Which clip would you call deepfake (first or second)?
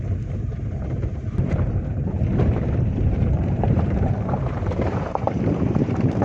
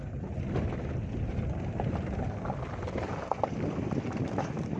first